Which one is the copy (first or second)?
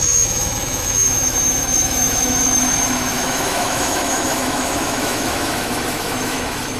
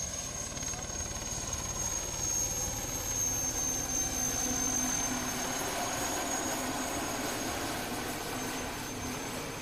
first